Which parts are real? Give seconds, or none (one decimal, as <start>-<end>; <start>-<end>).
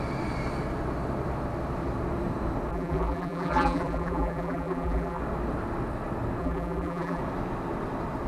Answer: 0.0-2.7; 5.2-6.4; 7.2-8.3